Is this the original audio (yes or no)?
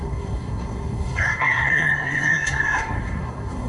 no